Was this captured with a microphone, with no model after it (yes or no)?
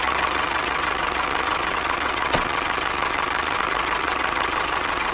no